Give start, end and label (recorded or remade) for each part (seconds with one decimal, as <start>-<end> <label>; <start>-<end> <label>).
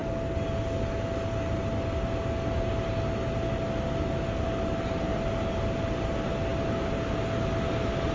0.0-8.1 recorded